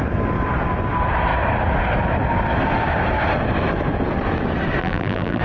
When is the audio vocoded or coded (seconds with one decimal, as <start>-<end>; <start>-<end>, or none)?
4.8-5.4